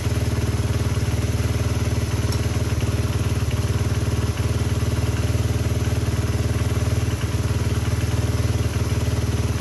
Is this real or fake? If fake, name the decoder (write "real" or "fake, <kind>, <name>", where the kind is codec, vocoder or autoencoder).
real